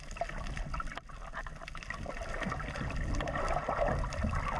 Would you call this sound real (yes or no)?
yes